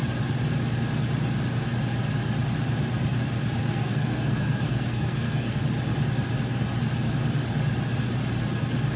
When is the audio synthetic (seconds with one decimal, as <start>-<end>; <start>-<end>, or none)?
3.6-5.6